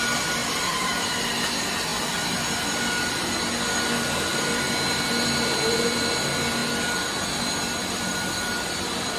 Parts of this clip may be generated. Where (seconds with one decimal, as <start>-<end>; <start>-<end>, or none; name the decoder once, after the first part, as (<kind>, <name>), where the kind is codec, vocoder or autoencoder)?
0.4-1.2 (vocoder, BigVGAN v2); 7.8-9.2